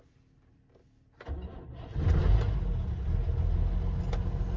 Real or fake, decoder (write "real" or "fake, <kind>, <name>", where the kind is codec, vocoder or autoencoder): real